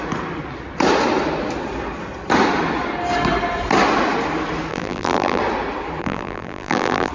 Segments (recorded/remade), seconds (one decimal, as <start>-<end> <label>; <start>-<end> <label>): 0.0-4.7 recorded; 4.7-5.4 remade; 5.4-6.0 recorded; 6.0-7.1 remade